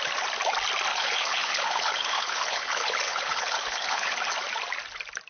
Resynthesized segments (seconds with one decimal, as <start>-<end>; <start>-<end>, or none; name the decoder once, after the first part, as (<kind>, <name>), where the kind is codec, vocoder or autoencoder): 0.9-4.1 (codec, HILCodec)